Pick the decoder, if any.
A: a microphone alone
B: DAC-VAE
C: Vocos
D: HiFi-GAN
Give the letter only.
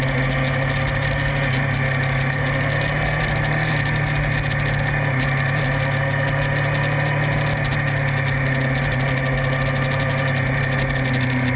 A